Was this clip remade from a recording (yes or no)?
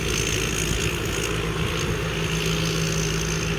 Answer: no